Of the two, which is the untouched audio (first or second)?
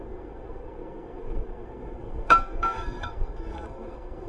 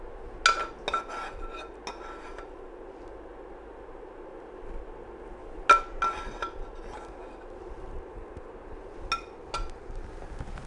second